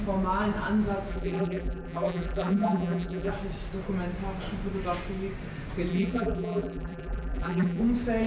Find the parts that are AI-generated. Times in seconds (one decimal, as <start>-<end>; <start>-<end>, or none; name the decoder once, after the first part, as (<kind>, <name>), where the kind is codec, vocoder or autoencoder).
1.1-3.3 (vocoder, BigVGAN v2); 5.9-7.8